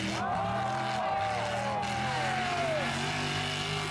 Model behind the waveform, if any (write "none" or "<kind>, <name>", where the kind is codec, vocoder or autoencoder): none